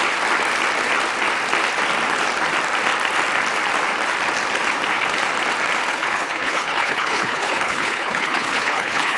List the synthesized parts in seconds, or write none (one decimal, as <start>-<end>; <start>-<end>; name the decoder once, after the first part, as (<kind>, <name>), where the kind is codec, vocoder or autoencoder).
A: 5.9-9.2 (codec, HILCodec)